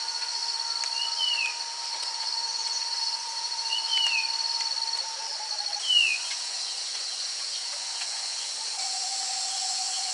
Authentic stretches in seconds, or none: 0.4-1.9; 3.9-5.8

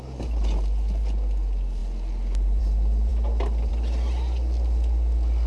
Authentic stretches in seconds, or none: 0.0-5.5